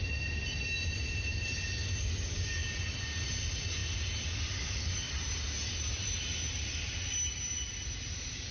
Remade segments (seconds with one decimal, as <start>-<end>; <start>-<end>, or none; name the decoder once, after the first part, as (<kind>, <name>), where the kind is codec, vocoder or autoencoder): none